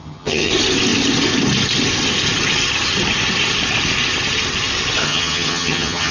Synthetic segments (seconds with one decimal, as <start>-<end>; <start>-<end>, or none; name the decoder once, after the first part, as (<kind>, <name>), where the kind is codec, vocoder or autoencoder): 0.0-0.5 (vocoder, HiFi-GAN); 5.0-6.1